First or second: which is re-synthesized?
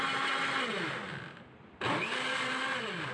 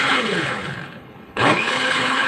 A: second